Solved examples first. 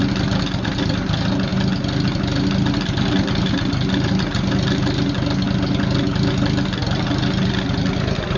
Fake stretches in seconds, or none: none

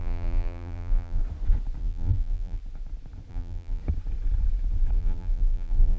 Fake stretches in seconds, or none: 0.0-1.2 (vocoder, BigVGAN v2); 1.8-2.6; 3.3-3.8; 4.9-6.0

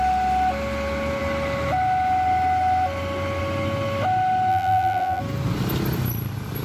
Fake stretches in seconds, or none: 4.5-5.2 (vocoder, BigVGAN v2)

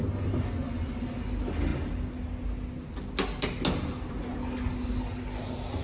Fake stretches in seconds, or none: none